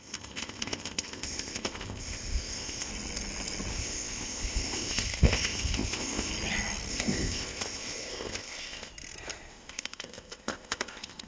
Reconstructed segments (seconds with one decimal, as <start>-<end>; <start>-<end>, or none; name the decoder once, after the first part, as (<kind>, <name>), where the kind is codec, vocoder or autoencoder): 0.0-2.9 (codec, ZipCodec); 3.7-6.3; 6.9-8.9; 9.5-11.3